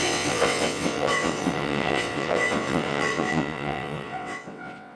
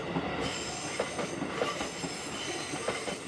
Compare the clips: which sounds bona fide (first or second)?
second